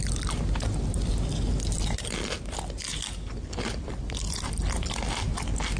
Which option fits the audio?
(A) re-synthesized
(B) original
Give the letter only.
B